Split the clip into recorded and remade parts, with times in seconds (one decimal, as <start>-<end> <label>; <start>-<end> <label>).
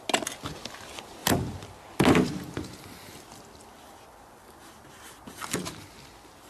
0.0-6.5 recorded